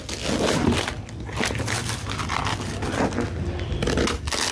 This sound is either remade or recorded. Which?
recorded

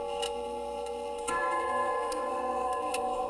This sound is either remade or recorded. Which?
remade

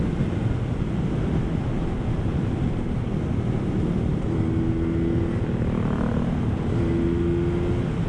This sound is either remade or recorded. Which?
recorded